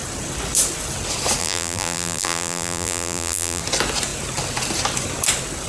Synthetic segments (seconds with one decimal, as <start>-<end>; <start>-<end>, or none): 1.4-3.6